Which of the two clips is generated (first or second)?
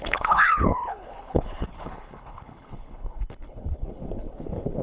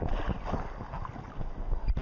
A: first